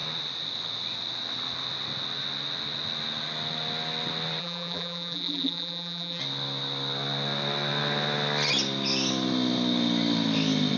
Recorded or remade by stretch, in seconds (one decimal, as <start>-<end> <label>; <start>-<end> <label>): 0.0-4.4 recorded; 4.4-6.2 remade; 6.2-10.8 recorded

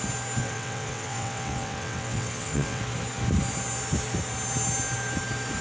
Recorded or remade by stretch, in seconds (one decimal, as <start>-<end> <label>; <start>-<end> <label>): 0.0-0.4 recorded; 0.4-2.8 remade; 2.8-5.6 recorded

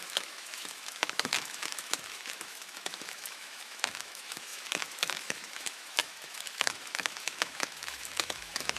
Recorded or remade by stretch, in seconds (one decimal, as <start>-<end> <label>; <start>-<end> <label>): 0.0-8.8 remade

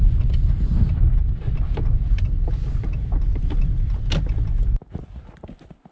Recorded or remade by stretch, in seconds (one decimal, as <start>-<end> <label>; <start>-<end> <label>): 0.0-5.9 recorded

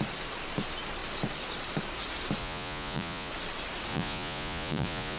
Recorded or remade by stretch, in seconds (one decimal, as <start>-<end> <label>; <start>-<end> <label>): 0.0-2.4 recorded; 2.4-3.3 remade; 3.3-3.9 recorded; 3.9-5.2 remade